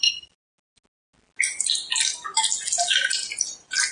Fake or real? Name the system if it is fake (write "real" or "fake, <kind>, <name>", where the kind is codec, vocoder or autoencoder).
real